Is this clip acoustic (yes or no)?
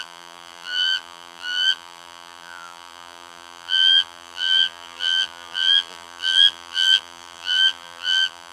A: no